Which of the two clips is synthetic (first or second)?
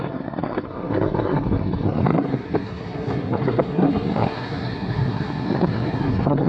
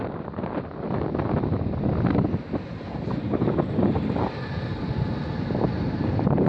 first